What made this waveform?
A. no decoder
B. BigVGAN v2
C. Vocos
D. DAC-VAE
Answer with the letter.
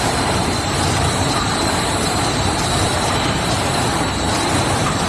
B